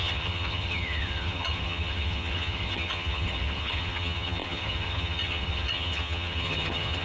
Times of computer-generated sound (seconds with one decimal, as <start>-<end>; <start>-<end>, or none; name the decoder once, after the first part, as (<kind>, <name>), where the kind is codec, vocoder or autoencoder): 0.0-7.0 (vocoder, HiFi-GAN)